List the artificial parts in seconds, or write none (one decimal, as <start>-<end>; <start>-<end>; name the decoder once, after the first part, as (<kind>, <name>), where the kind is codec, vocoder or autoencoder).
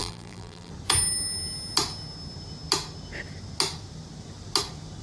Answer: 0.0-0.7 (vocoder, BigVGAN v2)